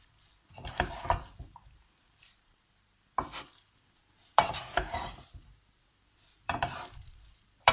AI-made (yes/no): yes